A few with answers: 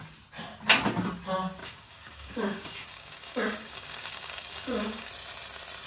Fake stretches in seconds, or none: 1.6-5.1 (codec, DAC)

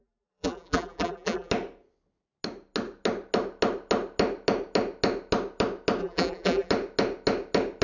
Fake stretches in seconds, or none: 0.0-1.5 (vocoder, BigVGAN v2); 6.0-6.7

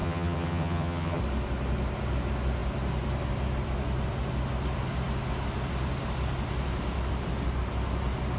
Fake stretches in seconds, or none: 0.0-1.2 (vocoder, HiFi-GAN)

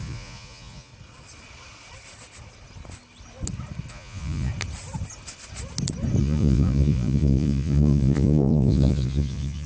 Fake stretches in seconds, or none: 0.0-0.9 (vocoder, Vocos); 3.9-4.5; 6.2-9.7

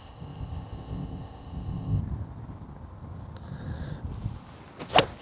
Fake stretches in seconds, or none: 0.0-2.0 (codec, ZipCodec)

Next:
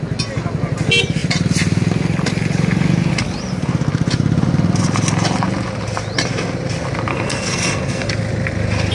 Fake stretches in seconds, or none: 7.1-8.1 (codec, SNAC)

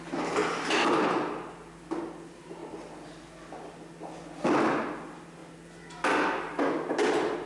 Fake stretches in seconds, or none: none